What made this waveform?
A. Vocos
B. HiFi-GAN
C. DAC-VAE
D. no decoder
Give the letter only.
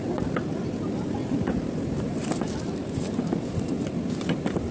D